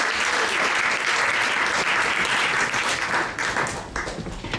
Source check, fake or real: real